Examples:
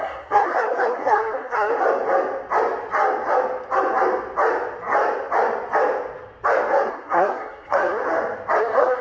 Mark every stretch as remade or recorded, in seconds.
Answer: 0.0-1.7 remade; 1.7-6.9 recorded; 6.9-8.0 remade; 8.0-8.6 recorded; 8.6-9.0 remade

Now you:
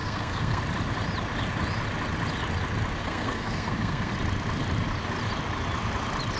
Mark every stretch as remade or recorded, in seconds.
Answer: 0.0-0.6 remade; 0.6-3.0 recorded; 3.0-4.1 remade; 4.1-6.4 recorded

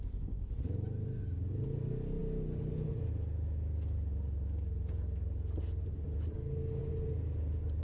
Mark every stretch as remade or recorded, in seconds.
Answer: 0.0-7.8 recorded

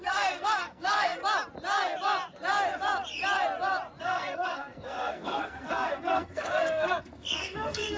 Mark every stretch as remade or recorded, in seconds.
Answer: 0.0-1.2 remade; 1.2-4.0 recorded; 4.0-8.0 remade

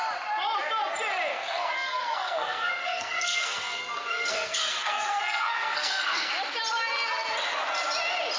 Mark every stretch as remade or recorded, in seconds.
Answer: 0.0-1.3 recorded; 1.3-6.3 remade; 6.3-8.4 recorded

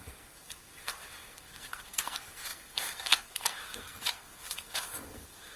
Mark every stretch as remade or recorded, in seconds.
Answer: 0.0-5.6 remade